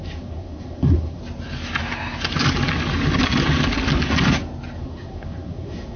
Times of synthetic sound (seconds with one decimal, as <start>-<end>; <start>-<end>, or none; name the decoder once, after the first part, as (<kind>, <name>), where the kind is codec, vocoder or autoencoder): 0.0-1.2 (codec, SNAC); 4.8-6.0